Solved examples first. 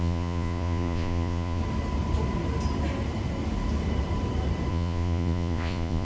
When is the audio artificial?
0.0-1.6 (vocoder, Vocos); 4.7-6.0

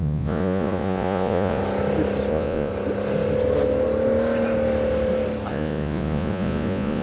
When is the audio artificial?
0.0-1.6 (vocoder, Vocos); 2.3-2.7; 5.5-7.0

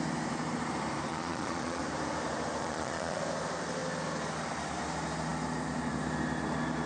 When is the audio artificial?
1.1-1.8 (vocoder, Vocos); 2.6-3.2